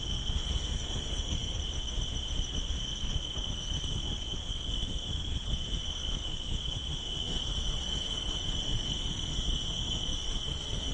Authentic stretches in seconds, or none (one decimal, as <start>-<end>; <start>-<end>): 1.6-2.7